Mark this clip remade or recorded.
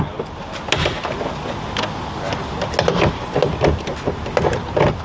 recorded